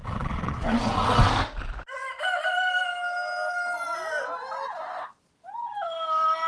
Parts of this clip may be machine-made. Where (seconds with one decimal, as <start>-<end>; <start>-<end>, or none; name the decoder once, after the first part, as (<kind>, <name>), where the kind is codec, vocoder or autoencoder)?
0.0-1.3 (vocoder, WaveNeXt)